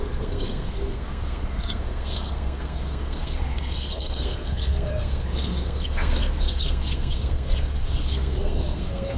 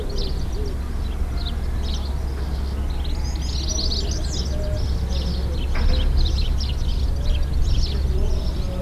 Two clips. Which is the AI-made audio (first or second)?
first